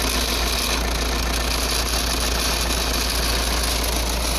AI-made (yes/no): no